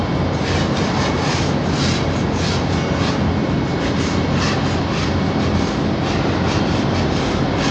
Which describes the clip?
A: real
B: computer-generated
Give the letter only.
A